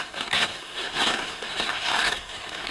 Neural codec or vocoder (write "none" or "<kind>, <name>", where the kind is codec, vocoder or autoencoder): codec, SNAC